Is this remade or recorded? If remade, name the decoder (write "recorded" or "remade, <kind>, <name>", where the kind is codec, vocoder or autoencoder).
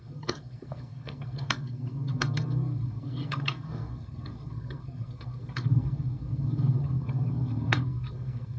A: remade, codec, SNAC